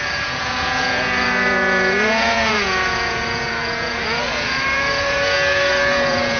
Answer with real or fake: fake